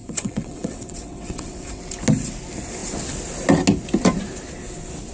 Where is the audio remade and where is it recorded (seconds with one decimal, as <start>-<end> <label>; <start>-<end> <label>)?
0.0-1.8 remade; 1.8-5.1 recorded